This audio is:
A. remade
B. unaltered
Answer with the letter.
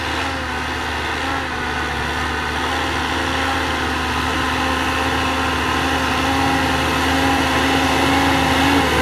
B